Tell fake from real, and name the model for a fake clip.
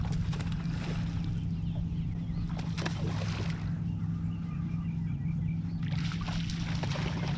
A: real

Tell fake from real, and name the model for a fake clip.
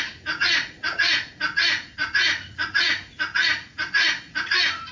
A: fake, vocoder, Vocos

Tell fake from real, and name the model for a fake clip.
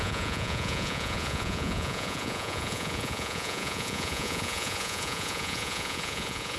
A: fake, vocoder, Vocos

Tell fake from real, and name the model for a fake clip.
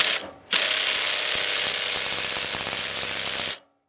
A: real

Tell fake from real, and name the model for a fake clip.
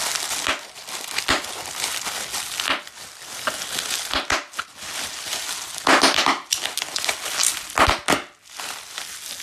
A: real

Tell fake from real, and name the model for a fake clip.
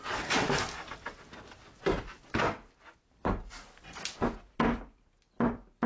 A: real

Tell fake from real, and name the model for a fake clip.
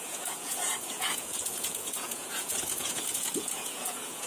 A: fake, vocoder, Vocos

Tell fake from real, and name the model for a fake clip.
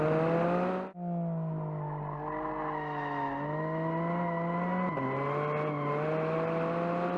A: real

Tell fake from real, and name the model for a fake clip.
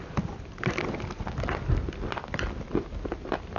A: real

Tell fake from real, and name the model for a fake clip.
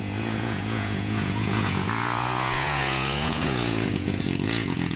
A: fake, vocoder, Vocos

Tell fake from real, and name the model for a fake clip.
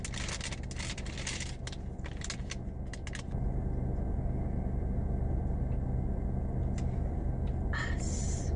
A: real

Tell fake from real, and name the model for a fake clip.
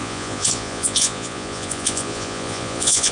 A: fake, vocoder, Vocos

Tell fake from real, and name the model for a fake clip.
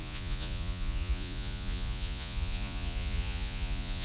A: fake, vocoder, Vocos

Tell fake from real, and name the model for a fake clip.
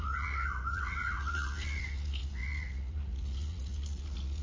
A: fake, vocoder, Vocos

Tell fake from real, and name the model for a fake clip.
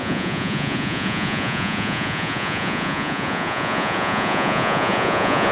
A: fake, vocoder, Vocos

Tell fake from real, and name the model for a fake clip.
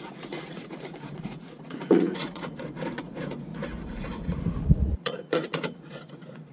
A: fake, vocoder, Vocos